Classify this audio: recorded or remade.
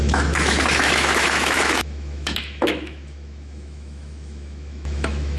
remade